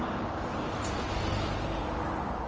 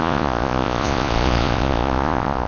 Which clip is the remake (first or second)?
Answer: second